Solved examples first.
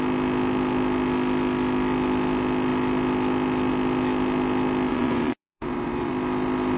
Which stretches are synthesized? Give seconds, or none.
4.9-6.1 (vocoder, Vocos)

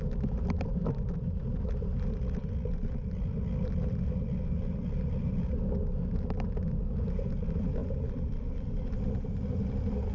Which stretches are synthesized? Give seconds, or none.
none

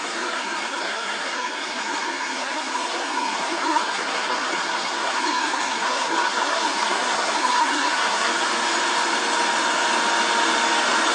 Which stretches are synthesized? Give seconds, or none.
0.0-8.3 (codec, SNAC)

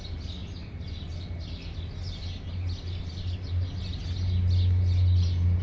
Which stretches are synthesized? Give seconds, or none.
none

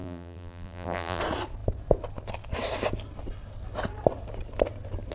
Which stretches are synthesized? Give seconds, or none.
0.0-1.2 (vocoder, BigVGAN v2)